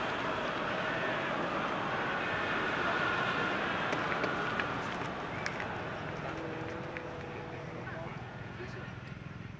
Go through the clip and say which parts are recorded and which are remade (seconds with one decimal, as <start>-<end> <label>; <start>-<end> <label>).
0.0-8.1 recorded; 8.1-8.8 remade; 8.8-9.6 recorded